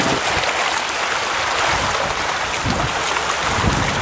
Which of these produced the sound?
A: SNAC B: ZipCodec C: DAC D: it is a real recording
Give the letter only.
D